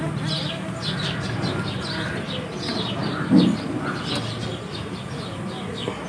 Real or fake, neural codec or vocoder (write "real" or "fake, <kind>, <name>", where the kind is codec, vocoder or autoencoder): real